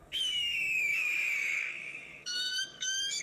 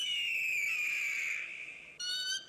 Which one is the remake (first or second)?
first